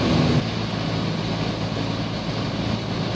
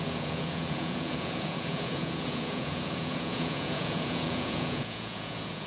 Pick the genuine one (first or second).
first